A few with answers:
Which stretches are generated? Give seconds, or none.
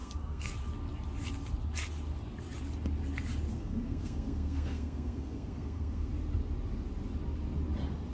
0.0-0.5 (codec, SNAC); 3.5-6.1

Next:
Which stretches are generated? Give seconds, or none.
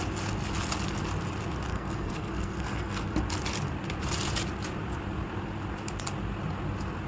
1.7-3.2 (codec, SNAC)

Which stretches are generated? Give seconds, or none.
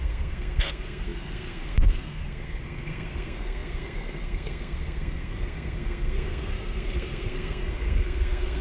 0.0-8.6 (codec, SNAC)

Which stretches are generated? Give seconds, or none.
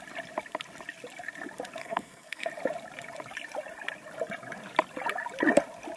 1.8-2.5 (codec, SNAC)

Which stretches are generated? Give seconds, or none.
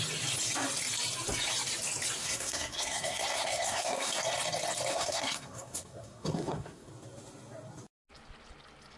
2.2-4.2 (codec, SNAC); 4.9-6.9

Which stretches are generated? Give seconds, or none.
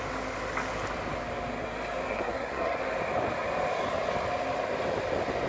2.1-2.8 (codec, SNAC)